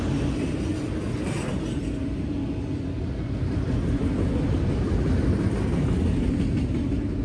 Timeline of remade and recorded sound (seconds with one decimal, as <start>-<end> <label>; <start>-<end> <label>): 0.0-7.2 recorded